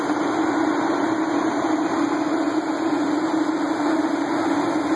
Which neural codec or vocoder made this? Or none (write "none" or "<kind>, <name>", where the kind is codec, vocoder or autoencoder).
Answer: none